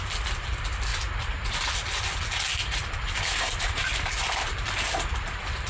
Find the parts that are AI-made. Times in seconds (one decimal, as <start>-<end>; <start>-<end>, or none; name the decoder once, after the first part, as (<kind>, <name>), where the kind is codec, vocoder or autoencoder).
0.9-1.5 (vocoder, BigVGAN v2); 2.5-5.7